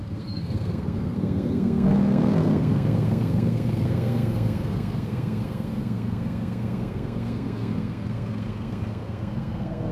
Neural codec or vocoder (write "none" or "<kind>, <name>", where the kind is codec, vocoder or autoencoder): codec, SNAC